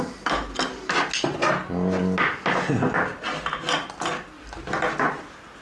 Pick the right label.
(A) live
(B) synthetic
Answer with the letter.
A